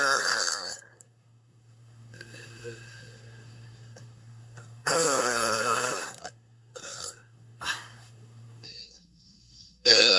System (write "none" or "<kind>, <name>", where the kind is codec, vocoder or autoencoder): codec, SNAC